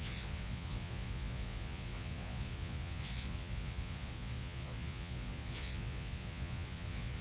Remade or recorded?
remade